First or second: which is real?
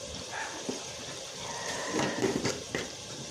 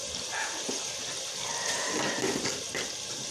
second